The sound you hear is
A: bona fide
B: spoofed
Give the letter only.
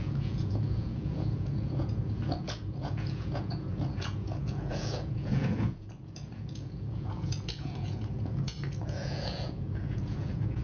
B